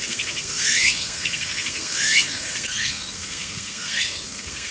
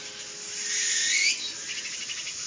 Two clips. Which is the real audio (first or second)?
second